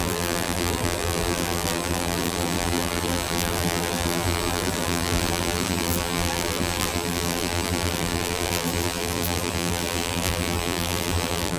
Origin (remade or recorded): remade